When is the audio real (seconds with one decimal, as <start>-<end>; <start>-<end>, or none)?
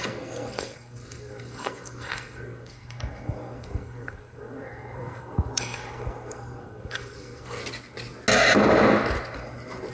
7.6-9.9